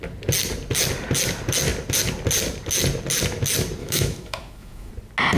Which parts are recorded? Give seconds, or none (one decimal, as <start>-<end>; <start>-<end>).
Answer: 0.0-3.8; 4.9-5.4